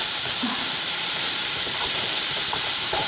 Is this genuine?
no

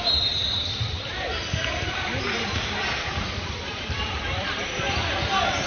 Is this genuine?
no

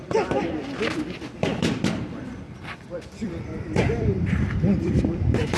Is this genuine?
no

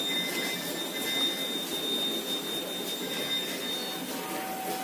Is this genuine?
yes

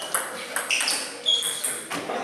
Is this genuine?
yes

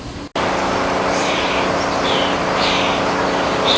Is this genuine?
yes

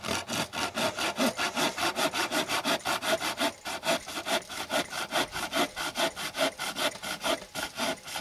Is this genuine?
yes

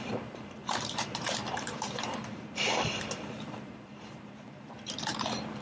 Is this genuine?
no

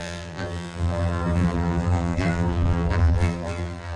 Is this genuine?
no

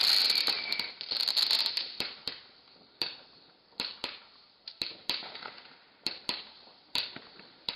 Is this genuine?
no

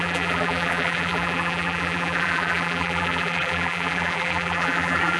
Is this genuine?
no